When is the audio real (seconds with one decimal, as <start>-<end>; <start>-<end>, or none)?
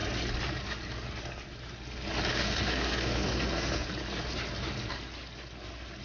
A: 0.0-2.3; 3.9-6.0